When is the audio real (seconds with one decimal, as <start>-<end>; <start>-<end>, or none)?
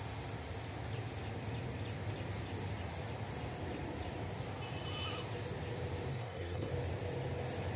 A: 0.0-6.1; 6.7-7.8